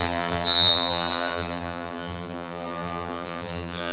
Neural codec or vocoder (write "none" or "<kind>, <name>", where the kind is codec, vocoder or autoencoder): vocoder, BigVGAN v2